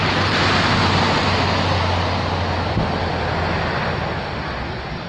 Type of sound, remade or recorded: recorded